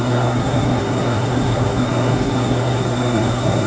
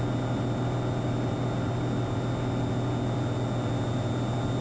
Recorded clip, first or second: second